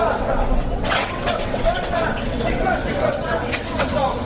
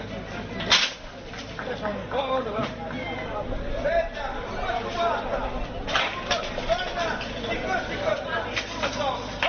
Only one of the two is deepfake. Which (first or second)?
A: first